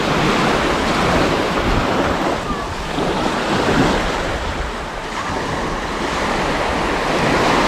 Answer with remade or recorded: recorded